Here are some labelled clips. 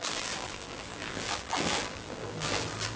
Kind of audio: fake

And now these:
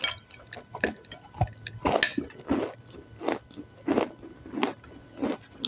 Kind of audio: real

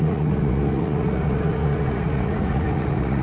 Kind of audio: fake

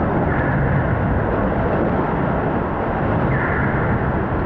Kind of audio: real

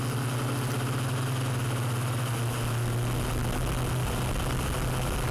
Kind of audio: real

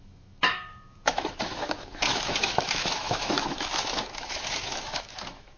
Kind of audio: fake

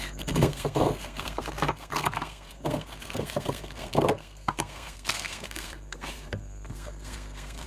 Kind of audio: fake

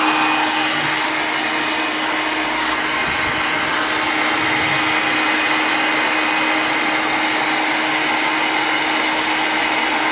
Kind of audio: real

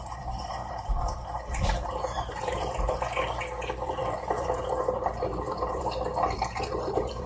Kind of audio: fake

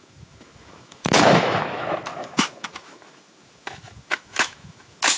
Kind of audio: fake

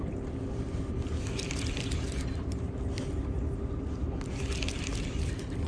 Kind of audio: real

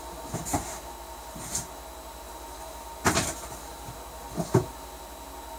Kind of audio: real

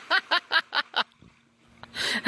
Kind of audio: real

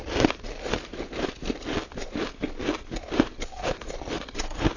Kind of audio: real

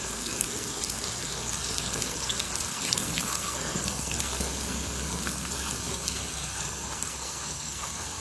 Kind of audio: fake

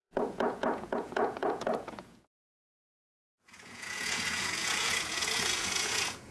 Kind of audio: fake